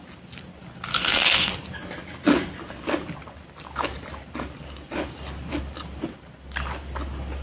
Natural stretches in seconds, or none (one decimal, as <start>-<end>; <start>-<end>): 0.0-0.9; 1.5-7.4